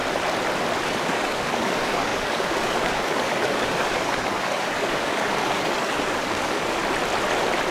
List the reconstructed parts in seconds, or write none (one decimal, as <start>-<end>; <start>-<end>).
0.8-6.8